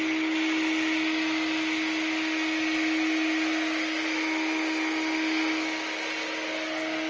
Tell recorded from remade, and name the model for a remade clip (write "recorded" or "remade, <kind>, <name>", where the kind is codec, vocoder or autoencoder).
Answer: recorded